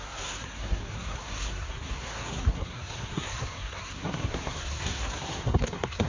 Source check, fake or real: fake